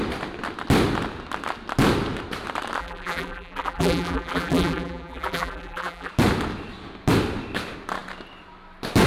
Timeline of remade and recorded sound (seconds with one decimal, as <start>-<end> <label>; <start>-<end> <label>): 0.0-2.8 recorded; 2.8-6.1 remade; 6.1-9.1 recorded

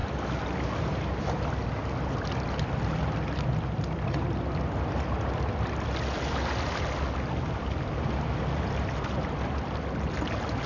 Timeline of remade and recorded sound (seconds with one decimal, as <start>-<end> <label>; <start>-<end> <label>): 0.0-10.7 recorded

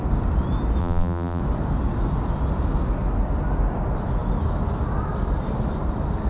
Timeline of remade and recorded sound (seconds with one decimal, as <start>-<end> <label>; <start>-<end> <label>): 0.0-0.8 recorded; 0.8-1.4 remade; 1.4-6.3 recorded

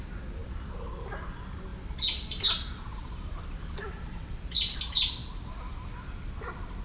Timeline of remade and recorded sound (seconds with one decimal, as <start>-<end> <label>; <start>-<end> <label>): 0.0-1.7 recorded; 1.7-4.8 remade; 4.8-6.8 recorded

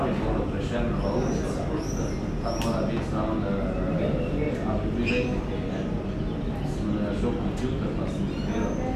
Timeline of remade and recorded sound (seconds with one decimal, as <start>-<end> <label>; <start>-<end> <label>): 0.0-9.0 recorded